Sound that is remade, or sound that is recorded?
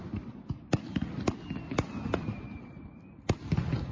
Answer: recorded